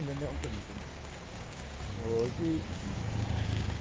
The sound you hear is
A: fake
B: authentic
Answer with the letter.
A